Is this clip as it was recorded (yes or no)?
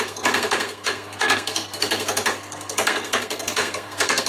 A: no